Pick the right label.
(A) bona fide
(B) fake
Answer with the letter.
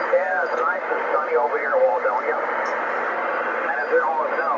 B